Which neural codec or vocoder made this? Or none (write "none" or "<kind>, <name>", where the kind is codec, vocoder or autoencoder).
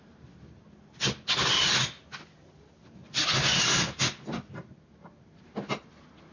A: none